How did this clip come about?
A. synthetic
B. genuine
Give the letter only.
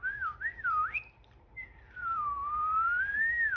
A